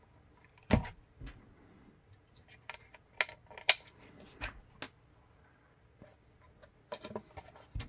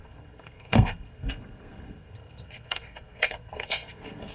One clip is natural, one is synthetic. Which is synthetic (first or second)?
second